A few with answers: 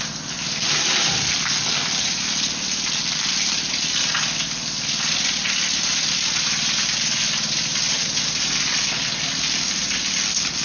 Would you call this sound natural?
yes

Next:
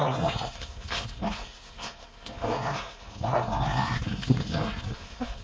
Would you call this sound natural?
no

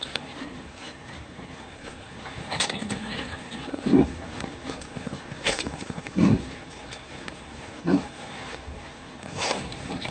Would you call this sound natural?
no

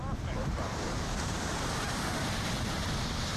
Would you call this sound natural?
yes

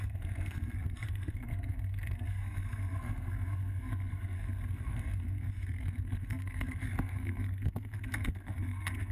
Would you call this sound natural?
no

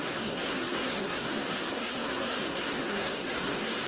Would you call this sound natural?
no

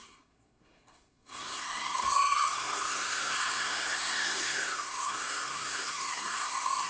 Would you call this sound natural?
no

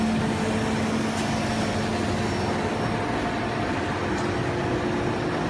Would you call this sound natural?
yes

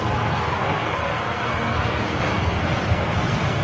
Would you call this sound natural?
no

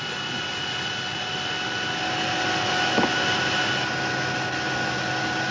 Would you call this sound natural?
yes